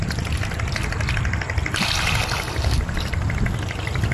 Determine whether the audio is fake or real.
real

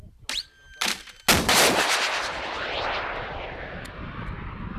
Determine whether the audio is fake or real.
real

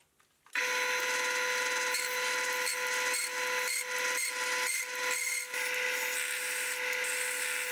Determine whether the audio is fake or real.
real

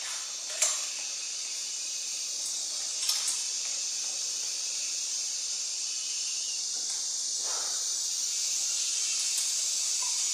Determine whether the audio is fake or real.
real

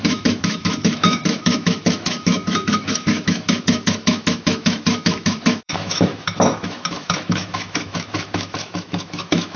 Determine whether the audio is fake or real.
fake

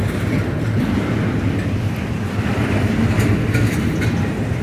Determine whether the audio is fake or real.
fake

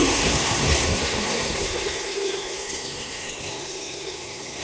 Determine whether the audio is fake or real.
fake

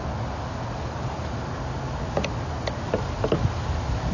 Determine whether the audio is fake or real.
real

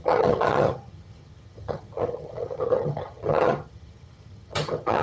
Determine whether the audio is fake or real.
fake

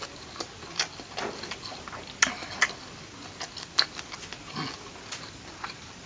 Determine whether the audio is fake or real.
real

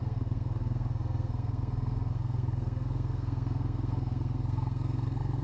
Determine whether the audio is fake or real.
fake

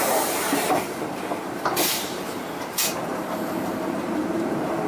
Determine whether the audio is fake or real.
fake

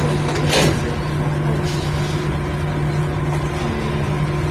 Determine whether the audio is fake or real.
real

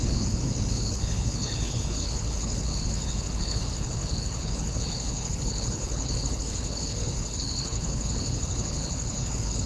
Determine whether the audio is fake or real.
fake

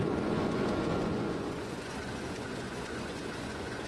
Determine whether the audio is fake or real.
fake